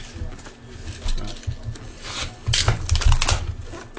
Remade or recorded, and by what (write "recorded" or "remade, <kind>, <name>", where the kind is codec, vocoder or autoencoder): recorded